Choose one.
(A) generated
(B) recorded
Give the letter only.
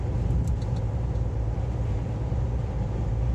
A